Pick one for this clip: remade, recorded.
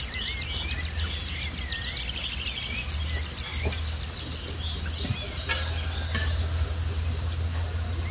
recorded